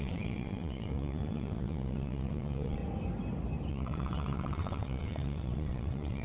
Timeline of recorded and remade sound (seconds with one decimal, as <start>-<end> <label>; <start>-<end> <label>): 0.0-2.8 remade; 2.8-3.7 recorded; 3.7-6.2 remade